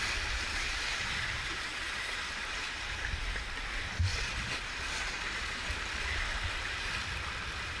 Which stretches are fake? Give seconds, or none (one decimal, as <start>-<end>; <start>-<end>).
0.5-2.2; 4.1-5.7